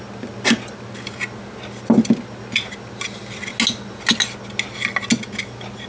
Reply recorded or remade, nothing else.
recorded